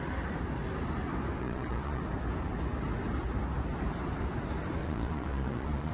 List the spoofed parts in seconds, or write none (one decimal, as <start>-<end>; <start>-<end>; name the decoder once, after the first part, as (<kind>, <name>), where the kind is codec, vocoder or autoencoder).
1.4-2.0 (vocoder, Vocos); 4.8-5.9